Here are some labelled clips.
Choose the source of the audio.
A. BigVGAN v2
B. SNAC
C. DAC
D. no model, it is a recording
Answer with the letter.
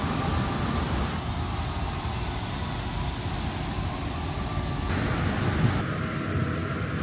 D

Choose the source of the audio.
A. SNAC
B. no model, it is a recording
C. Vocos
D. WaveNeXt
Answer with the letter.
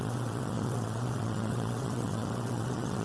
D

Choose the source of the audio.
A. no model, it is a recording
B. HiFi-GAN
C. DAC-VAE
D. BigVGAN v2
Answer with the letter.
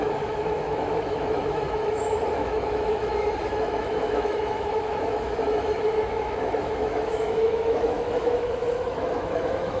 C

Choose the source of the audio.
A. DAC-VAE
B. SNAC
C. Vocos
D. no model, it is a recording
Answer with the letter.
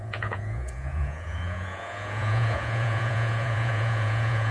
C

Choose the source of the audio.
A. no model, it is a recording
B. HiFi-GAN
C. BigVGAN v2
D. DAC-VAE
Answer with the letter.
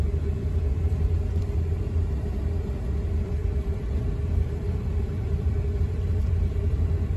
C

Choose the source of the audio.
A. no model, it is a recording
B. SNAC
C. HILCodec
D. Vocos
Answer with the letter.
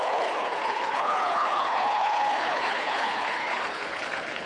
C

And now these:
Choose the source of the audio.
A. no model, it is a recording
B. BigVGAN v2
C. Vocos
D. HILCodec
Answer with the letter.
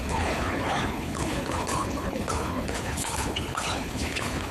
D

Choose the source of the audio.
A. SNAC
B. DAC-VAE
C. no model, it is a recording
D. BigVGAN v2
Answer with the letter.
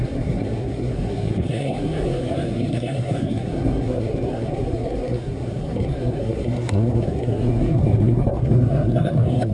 A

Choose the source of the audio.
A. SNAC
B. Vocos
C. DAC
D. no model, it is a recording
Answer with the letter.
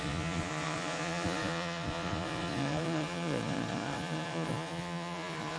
B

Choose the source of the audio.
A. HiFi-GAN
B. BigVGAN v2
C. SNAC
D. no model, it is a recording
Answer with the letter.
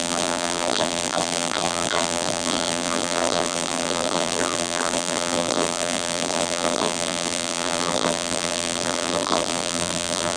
B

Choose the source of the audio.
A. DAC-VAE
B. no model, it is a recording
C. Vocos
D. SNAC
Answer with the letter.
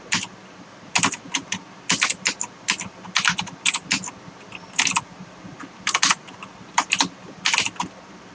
B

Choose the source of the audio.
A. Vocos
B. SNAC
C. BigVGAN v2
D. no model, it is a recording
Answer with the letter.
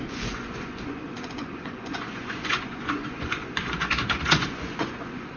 A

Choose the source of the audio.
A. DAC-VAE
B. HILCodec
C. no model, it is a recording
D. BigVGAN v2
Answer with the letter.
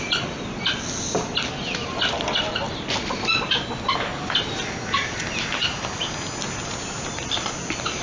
C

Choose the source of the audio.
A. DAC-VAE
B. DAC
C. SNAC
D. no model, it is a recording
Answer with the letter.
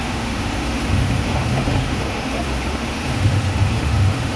A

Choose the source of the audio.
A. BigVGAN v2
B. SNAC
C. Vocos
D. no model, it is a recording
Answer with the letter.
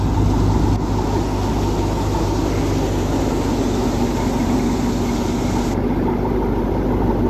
D